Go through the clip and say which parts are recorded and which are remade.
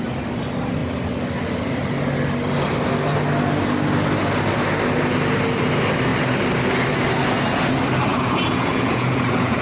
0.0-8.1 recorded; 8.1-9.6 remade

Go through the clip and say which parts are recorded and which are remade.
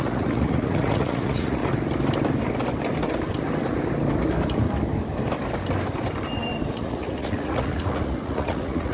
0.0-1.6 remade; 1.6-6.7 recorded; 6.7-8.9 remade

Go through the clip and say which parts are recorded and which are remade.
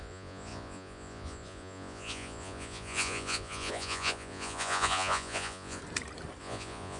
0.0-5.8 remade; 5.8-6.4 recorded; 6.4-7.0 remade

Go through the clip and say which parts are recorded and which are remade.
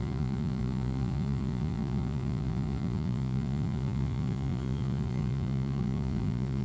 0.0-6.6 remade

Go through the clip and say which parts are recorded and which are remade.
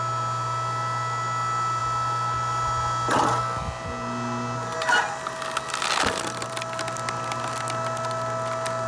0.0-8.9 recorded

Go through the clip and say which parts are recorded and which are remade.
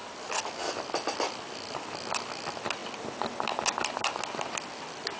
0.0-5.2 recorded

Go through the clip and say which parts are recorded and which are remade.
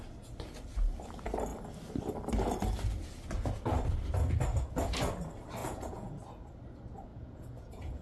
0.0-5.6 recorded; 5.6-6.1 remade; 6.1-7.1 recorded; 7.1-8.0 remade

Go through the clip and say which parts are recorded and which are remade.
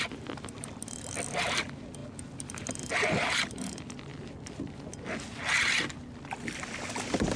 0.0-7.4 recorded